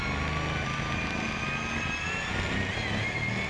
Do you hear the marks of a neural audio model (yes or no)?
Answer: no